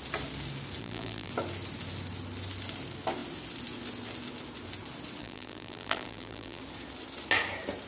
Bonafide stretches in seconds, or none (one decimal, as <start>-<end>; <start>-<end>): 0.0-0.8; 1.3-5.2; 6.6-7.9